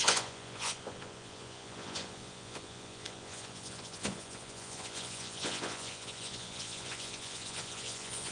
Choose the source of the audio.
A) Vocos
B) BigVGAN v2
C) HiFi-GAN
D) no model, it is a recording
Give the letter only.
A